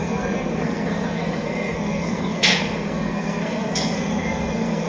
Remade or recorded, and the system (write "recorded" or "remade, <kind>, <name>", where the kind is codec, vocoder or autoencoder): remade, codec, SNAC